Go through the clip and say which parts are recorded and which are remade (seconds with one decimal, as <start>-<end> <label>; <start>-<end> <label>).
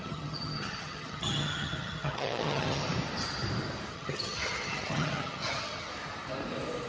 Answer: 0.0-2.8 remade; 2.8-3.9 recorded; 3.9-5.9 remade; 5.9-6.9 recorded